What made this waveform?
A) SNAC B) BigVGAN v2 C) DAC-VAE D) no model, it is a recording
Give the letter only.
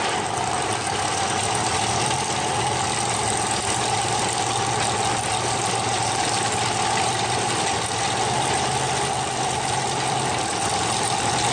D